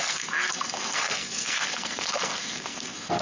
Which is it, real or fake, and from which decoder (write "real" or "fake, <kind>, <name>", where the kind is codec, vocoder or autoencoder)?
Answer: fake, codec, SNAC